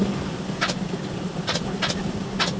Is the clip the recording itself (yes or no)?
yes